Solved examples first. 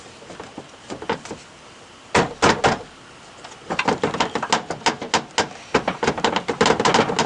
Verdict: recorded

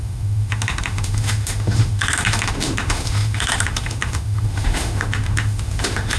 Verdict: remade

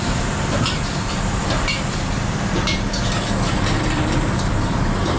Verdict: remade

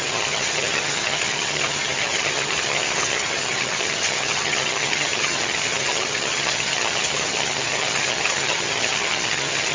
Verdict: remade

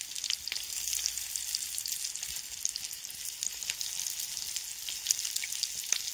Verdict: recorded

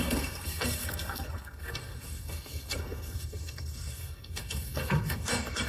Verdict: remade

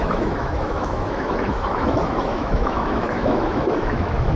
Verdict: remade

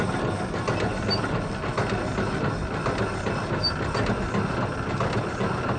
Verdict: recorded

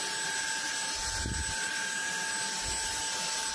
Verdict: recorded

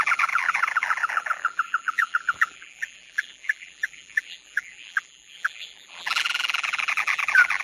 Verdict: remade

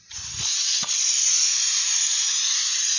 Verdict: recorded